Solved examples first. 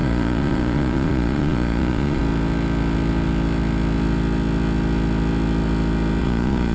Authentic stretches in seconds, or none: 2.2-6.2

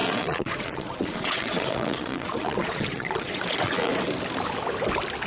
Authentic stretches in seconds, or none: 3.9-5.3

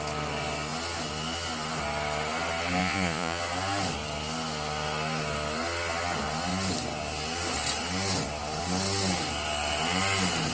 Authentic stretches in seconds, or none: 0.0-2.8; 3.4-10.5

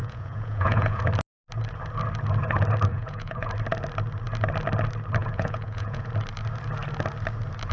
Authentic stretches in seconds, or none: 1.0-2.9; 3.5-5.2; 6.1-7.7